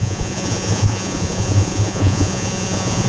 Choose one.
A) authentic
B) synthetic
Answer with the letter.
B